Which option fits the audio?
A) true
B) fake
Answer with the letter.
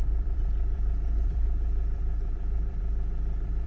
B